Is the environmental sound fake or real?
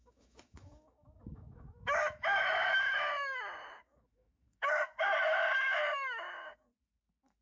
fake